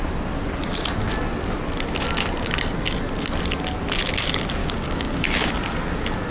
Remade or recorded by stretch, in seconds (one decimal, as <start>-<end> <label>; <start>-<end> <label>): 0.0-4.6 recorded; 4.6-5.5 remade; 5.5-6.3 recorded